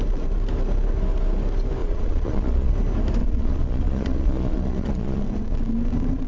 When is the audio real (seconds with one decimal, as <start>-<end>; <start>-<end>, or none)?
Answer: 0.0-1.8; 2.7-3.2; 5.2-6.3